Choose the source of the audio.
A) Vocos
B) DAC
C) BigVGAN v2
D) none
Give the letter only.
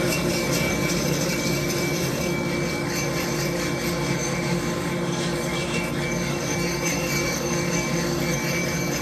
B